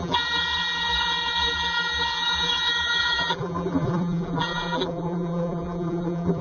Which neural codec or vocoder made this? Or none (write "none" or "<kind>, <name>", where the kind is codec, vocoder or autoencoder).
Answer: vocoder, BigVGAN v2